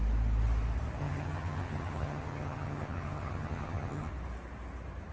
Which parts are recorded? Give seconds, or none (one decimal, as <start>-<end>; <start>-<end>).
0.0-1.0; 4.1-5.1